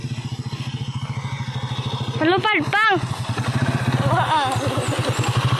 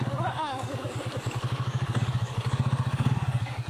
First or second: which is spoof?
second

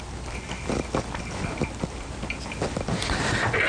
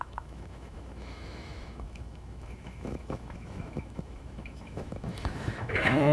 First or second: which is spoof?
second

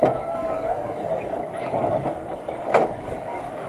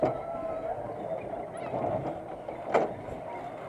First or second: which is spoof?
first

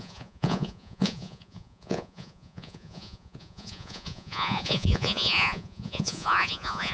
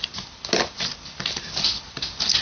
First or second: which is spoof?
first